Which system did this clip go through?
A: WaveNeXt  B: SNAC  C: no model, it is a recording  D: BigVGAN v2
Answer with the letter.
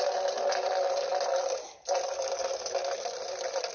C